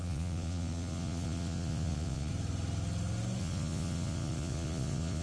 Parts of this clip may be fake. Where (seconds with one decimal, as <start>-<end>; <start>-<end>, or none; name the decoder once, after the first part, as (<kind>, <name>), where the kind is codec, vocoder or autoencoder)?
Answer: 0.0-2.3 (vocoder, Vocos); 3.4-5.2